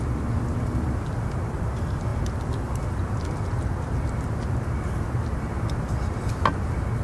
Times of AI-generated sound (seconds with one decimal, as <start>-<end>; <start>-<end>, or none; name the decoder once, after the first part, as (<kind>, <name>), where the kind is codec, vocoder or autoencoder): none